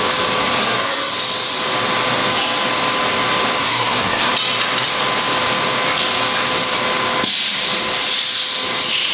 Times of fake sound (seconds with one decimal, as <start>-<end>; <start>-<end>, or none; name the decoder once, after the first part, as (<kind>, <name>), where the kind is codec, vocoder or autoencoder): 0.6-1.1 (codec, SNAC); 3.6-4.3

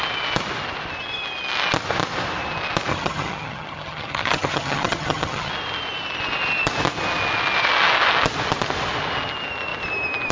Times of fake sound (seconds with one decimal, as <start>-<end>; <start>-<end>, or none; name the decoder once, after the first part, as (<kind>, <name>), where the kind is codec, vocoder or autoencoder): 2.9-5.5 (vocoder, HiFi-GAN)

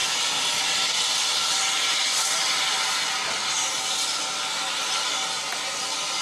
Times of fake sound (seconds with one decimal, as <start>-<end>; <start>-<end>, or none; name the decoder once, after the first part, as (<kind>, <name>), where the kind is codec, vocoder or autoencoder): none

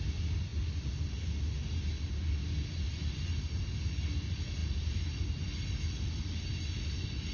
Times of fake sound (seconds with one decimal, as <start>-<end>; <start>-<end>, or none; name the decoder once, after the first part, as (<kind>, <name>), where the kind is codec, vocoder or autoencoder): none

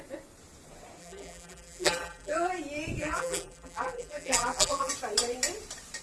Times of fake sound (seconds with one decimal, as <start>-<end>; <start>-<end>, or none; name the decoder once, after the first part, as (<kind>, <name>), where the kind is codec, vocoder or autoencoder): 1.0-2.5 (vocoder, BigVGAN v2); 3.0-4.9

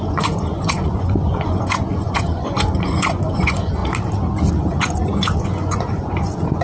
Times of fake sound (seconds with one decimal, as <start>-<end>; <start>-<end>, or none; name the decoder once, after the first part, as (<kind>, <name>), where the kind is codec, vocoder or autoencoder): 0.0-3.8 (vocoder, Vocos); 4.5-6.6

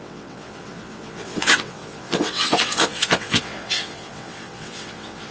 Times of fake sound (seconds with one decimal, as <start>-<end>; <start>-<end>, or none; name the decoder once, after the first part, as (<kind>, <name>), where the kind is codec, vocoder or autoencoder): 0.0-5.3 (vocoder, WaveNeXt)